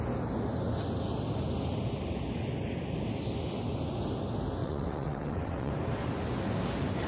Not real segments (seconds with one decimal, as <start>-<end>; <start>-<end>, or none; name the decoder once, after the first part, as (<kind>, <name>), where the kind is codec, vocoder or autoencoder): 4.6-5.7 (vocoder, WaveNeXt)